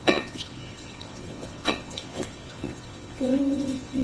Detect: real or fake fake